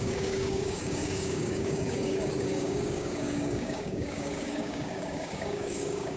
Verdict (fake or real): fake